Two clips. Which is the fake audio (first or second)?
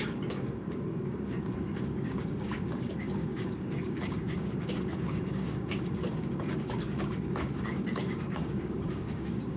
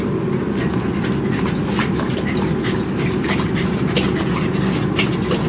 first